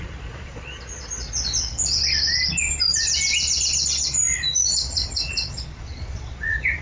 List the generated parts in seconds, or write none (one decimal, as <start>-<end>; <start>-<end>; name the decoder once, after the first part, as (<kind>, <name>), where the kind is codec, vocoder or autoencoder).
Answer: 0.0-1.9 (vocoder, Vocos); 4.5-6.8